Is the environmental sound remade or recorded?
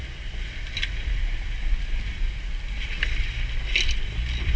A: recorded